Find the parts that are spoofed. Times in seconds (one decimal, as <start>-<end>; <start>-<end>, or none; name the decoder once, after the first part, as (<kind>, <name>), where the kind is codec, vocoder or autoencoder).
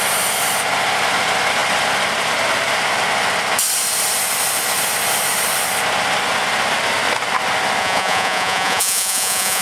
7.8-9.6 (vocoder, Vocos)